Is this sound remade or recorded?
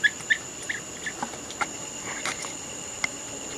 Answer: recorded